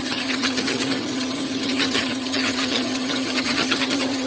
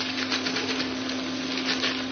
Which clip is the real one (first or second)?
second